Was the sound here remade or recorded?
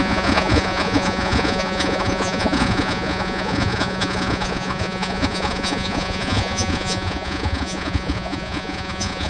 remade